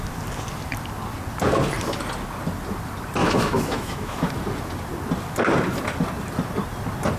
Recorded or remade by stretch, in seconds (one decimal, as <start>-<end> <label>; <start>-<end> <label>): 0.0-3.2 recorded; 3.2-4.3 remade; 4.3-7.2 recorded